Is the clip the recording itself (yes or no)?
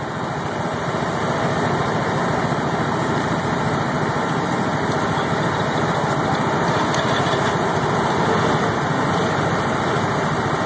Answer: yes